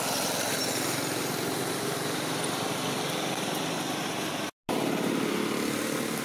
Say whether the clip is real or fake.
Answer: real